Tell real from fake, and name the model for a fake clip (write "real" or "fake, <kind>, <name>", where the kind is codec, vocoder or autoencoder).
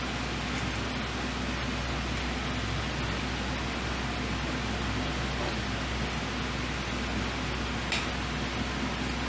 real